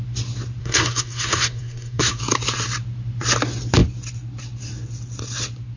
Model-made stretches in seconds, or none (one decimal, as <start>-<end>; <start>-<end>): 0.6-2.2